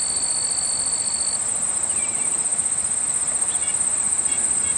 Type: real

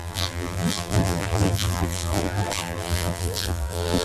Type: fake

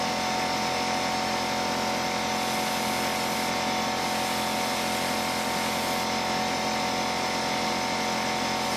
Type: real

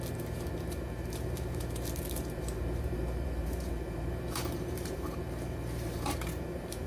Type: fake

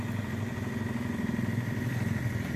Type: real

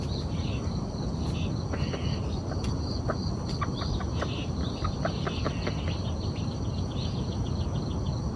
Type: real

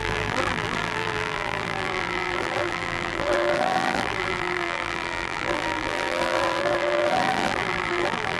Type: fake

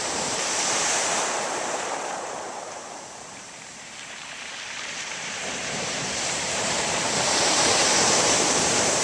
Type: fake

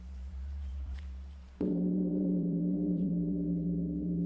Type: fake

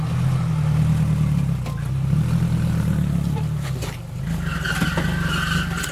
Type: real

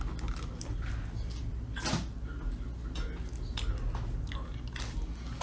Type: real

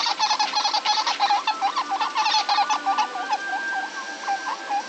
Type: fake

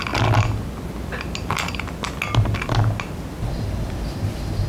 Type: real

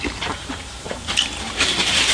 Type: fake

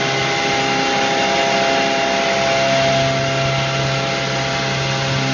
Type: real